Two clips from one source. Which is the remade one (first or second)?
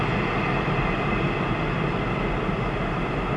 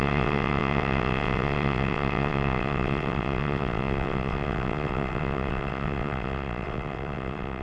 second